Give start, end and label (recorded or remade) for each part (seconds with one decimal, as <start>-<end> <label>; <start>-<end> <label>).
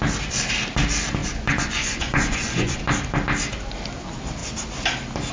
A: 0.0-1.2 recorded; 1.2-2.8 remade; 2.8-5.3 recorded